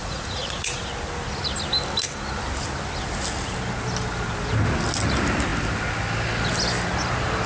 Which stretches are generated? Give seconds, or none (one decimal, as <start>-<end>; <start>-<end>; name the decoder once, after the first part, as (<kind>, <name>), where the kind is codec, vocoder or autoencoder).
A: 0.0-0.8 (vocoder, Vocos)

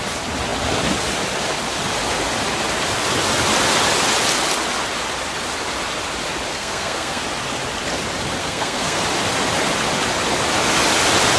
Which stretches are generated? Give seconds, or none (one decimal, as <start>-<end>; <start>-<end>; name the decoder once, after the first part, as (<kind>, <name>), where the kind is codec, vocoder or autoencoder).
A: 6.5-7.2 (codec, SNAC); 8.4-9.0

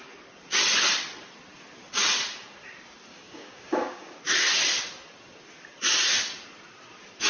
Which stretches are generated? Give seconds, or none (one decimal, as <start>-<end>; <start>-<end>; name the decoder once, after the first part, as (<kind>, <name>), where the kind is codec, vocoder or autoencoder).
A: 3.1-4.2 (codec, DAC)

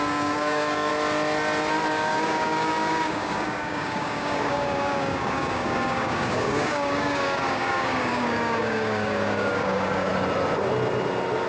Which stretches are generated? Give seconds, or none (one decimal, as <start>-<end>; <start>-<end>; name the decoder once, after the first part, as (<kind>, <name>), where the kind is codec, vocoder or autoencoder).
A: 0.0-0.9 (codec, DAC); 1.9-10.1

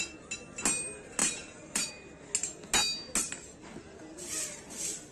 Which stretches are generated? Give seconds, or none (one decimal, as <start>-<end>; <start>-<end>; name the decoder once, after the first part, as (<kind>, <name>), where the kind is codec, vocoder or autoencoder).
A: 1.2-1.9 (vocoder, BigVGAN v2)